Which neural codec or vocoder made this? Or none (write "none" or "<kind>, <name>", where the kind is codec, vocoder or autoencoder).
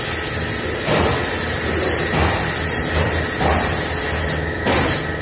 none